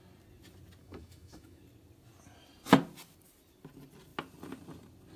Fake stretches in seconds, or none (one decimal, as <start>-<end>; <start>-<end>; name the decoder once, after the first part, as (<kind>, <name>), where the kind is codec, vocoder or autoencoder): 0.8-1.6 (autoencoder, DAC-VAE)